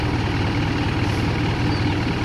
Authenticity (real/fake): real